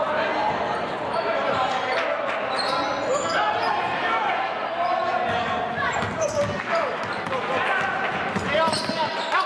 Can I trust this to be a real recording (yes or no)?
yes